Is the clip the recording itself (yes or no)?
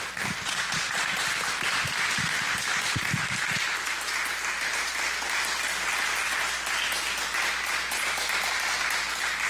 yes